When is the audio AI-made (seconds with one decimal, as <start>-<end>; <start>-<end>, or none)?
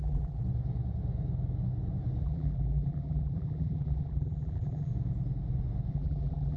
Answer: 0.0-0.4; 2.2-4.9; 5.9-6.6